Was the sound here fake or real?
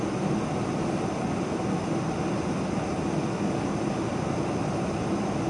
real